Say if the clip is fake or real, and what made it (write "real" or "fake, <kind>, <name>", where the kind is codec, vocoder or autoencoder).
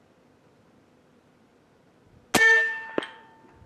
real